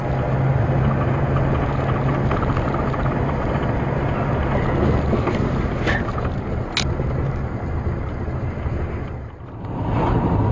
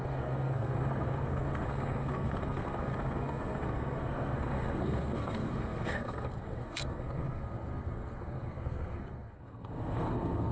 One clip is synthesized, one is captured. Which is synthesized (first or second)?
second